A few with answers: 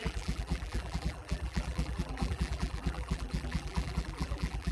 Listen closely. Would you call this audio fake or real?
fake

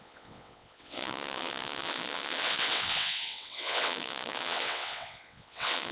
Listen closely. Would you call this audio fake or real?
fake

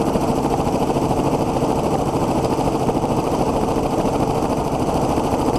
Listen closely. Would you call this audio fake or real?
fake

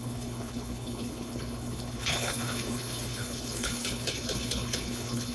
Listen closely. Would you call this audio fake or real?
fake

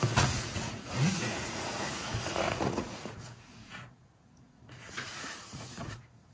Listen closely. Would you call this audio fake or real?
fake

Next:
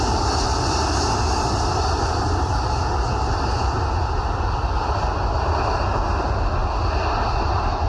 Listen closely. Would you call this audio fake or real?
real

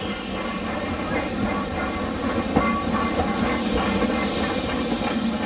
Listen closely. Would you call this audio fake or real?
real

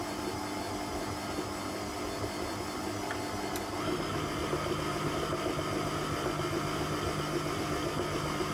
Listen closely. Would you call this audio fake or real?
real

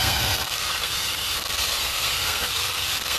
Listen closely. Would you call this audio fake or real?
fake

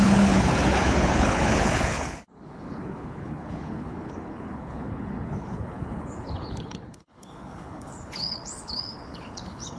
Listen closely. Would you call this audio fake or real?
fake